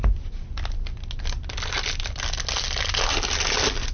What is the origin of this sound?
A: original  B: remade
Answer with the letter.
A